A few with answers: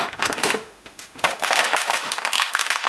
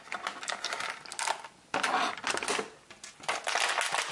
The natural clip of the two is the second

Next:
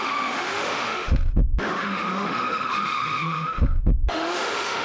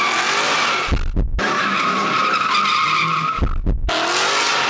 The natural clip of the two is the second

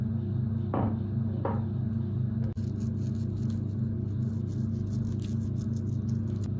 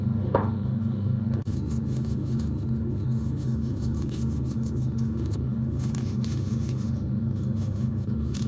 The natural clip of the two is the first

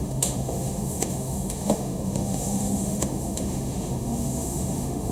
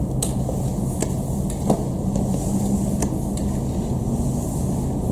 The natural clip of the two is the second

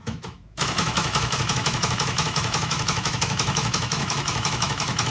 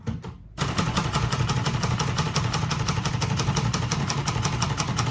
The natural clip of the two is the second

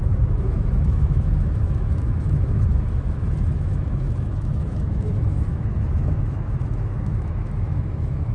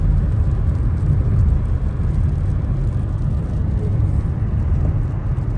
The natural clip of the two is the second